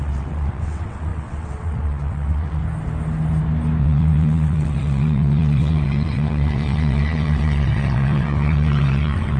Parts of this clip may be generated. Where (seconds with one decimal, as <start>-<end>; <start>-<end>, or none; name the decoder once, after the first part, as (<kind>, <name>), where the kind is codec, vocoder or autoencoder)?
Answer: 0.0-2.6 (vocoder, WaveNeXt); 3.8-9.4